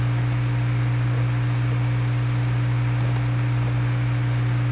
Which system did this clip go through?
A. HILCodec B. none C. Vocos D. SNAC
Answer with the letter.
B